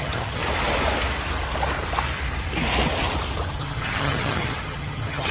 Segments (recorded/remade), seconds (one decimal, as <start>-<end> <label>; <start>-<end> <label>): 0.0-0.4 remade; 0.4-3.6 recorded; 3.6-5.3 remade